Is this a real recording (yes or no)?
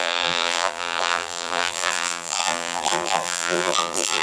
no